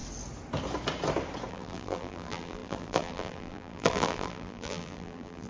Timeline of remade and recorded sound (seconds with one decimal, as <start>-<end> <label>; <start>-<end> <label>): 0.0-1.5 recorded; 1.5-5.5 remade